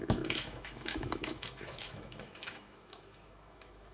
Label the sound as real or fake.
fake